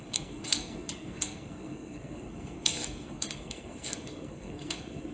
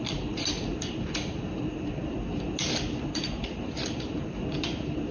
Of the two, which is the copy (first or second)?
first